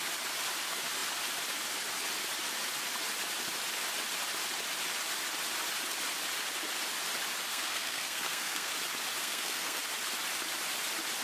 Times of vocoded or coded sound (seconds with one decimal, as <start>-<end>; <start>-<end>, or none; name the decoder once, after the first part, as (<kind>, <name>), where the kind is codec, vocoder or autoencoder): 7.5-8.7 (codec, SNAC); 9.2-9.8